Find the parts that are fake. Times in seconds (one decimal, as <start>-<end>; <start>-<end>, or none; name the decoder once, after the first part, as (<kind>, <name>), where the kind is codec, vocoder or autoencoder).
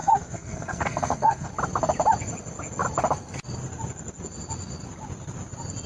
0.0-1.5 (codec, SNAC)